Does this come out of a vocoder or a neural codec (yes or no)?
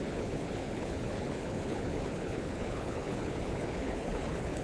yes